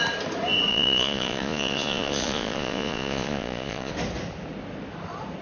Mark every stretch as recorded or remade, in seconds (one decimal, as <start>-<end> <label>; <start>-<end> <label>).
0.0-0.7 recorded; 0.7-3.9 remade; 3.9-5.4 recorded